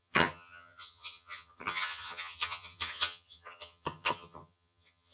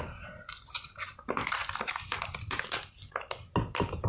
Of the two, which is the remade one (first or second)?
first